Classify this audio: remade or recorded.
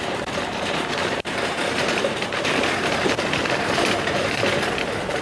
remade